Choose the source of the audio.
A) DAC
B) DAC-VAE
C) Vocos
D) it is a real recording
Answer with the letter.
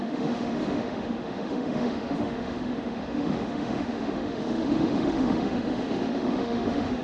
B